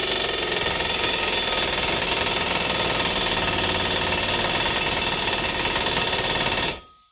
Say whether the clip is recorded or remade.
recorded